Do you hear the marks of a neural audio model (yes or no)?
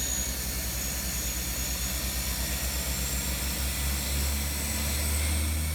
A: no